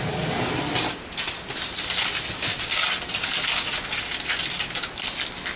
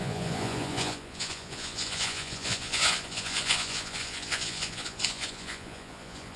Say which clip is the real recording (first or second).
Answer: first